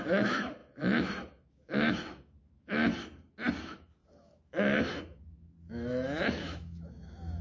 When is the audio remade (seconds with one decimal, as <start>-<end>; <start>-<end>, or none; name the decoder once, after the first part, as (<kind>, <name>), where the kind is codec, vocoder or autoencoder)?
0.0-2.9 (autoencoder, DAC-VAE); 3.6-7.4